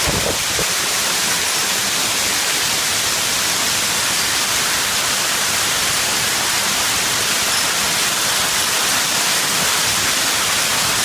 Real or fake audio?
real